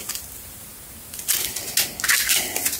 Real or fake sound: real